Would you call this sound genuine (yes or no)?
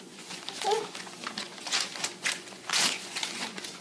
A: no